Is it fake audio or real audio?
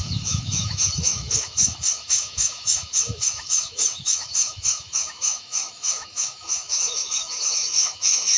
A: fake